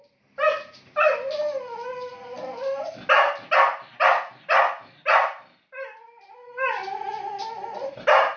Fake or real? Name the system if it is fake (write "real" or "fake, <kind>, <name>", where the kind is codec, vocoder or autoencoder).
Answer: real